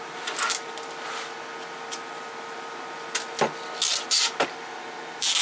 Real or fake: real